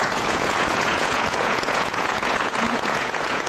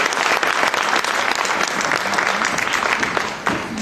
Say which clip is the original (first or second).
second